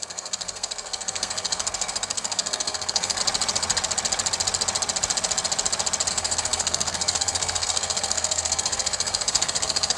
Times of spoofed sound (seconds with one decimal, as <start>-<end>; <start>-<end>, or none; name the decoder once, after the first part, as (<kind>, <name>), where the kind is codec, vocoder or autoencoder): 0.0-3.2 (codec, SNAC); 6.1-10.0